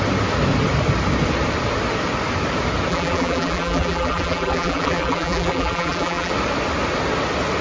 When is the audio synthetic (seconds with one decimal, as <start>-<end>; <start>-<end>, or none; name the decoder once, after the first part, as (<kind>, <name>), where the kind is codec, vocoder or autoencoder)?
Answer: 2.9-6.3 (vocoder, BigVGAN v2)